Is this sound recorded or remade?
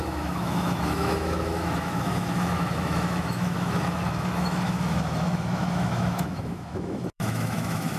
remade